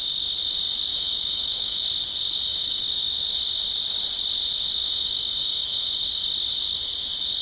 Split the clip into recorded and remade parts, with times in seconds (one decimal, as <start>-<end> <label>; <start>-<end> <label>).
0.0-0.9 recorded; 0.9-1.8 remade; 1.8-2.5 recorded; 2.5-3.3 remade; 3.3-4.8 recorded; 4.8-6.0 remade; 6.0-7.4 recorded